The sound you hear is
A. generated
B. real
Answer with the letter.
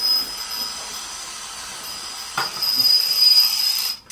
B